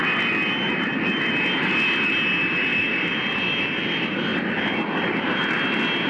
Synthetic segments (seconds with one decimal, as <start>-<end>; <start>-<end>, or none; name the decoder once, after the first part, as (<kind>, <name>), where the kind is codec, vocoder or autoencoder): 2.7-3.9 (vocoder, BigVGAN v2); 4.3-5.5

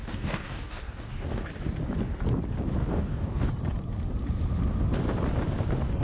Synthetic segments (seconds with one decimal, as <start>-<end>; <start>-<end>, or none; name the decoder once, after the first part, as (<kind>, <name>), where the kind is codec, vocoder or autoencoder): 0.0-1.5 (codec, DAC); 2.8-3.5

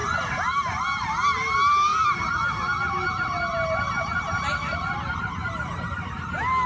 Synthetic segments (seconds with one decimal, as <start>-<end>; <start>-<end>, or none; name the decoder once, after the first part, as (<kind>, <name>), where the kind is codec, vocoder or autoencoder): none

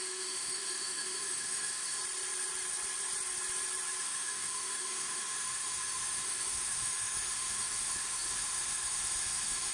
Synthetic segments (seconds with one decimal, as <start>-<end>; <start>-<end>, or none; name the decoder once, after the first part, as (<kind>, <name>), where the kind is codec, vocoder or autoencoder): 0.0-2.0 (autoencoder, DAC-VAE); 4.0-9.7